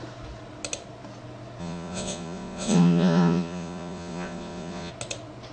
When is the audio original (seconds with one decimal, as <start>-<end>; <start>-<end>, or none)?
0.0-1.6; 4.9-5.5

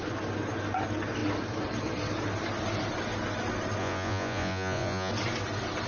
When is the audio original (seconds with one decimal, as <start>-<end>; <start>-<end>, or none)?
0.0-3.8; 5.1-5.9

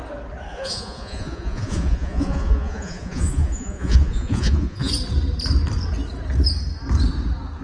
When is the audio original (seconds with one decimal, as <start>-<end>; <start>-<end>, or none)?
0.0-0.5; 4.9-7.6

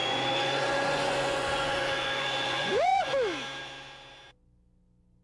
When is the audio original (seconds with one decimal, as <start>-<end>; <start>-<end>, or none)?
3.1-5.2

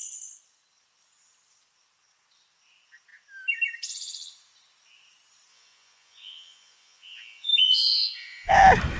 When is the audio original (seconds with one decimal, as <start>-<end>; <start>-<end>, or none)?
0.0-5.5; 8.5-9.0

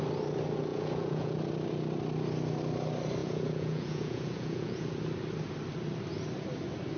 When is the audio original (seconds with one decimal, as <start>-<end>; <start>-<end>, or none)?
0.0-0.7; 1.4-3.2; 4.9-7.0